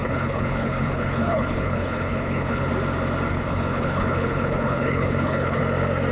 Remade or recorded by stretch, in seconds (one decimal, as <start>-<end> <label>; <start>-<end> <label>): 0.0-2.7 remade; 2.7-3.3 recorded; 3.3-5.6 remade; 5.6-6.1 recorded